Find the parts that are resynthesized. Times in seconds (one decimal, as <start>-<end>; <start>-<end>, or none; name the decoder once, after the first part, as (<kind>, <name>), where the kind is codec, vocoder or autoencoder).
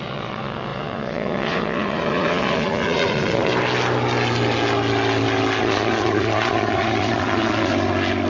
0.0-3.5 (vocoder, Vocos); 5.6-7.7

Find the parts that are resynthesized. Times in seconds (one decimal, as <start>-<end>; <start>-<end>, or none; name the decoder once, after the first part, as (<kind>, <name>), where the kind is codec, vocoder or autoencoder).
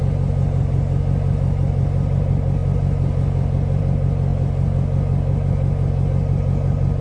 none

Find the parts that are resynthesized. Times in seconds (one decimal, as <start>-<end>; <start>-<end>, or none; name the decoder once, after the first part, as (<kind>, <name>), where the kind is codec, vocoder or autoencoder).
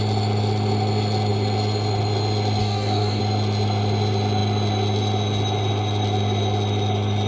2.6-3.2 (codec, DAC)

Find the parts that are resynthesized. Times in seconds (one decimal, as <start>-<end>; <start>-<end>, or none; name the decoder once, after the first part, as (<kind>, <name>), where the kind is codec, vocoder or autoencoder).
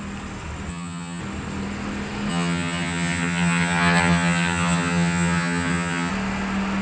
0.7-1.2 (vocoder, HiFi-GAN); 2.3-6.1